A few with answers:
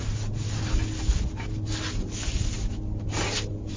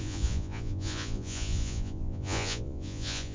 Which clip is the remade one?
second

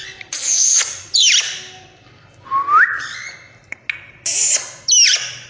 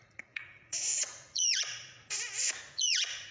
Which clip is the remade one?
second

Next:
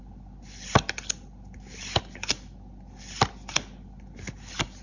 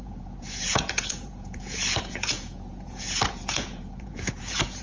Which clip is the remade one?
second